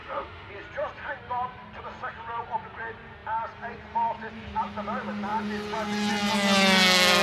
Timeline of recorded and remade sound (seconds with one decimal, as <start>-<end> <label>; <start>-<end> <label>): 0.0-0.5 remade; 0.5-7.2 recorded